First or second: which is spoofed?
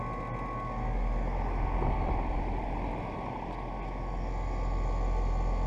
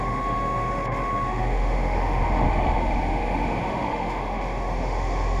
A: second